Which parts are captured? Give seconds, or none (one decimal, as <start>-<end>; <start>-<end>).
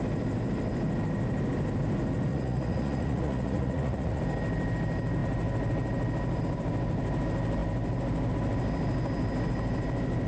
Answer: 0.0-2.3; 4.2-10.3